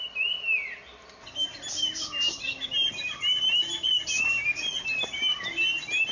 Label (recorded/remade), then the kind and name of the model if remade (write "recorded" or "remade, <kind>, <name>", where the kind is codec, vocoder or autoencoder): recorded